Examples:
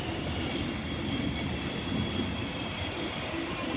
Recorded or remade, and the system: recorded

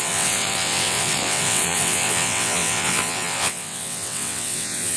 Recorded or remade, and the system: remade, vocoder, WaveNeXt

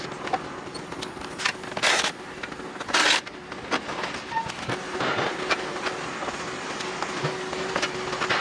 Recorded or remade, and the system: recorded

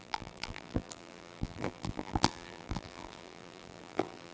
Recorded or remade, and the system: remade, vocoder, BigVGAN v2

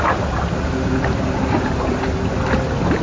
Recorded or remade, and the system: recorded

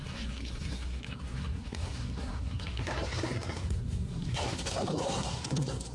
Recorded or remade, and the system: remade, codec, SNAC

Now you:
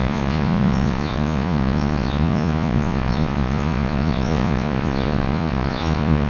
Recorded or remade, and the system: remade, vocoder, Vocos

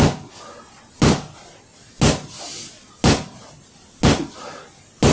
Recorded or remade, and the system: recorded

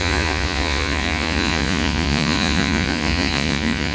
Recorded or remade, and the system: remade, vocoder, Vocos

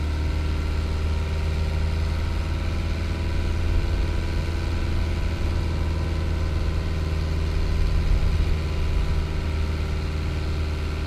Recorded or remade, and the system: recorded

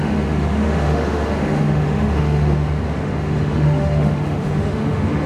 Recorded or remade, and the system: remade, autoencoder, DAC-VAE